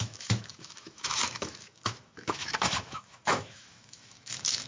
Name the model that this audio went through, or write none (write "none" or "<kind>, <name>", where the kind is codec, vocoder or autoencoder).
autoencoder, DAC-VAE